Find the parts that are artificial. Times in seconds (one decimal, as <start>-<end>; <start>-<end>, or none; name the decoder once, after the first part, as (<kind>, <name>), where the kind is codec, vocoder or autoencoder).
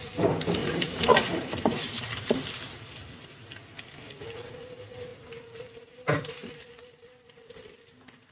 0.6-2.8 (vocoder, BigVGAN v2)